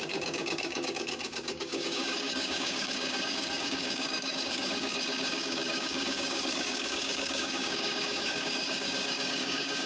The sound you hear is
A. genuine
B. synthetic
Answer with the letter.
B